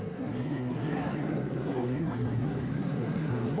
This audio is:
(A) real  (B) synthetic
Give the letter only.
B